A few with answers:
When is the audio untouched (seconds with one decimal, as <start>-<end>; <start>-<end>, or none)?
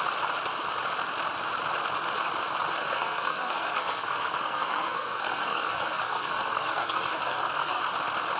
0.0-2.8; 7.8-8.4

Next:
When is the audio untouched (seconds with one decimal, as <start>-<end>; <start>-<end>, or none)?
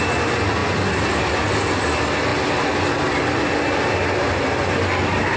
0.0-5.4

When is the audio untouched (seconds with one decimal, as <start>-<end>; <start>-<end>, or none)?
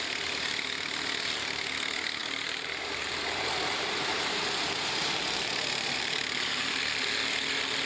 0.0-2.2; 6.8-7.9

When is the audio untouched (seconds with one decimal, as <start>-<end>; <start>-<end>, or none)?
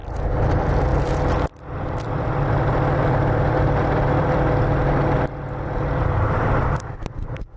0.0-0.5